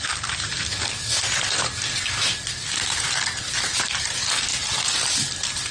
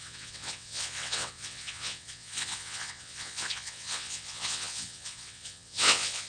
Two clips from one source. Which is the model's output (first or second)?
second